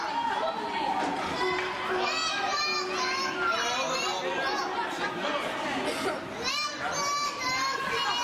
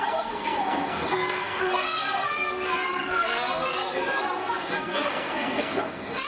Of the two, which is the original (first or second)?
first